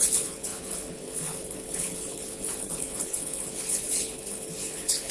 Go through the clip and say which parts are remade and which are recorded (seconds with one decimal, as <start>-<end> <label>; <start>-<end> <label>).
0.0-5.1 remade